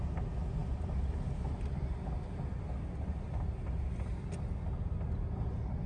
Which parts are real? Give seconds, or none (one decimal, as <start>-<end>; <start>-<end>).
0.0-5.9